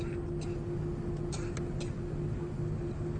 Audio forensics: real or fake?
real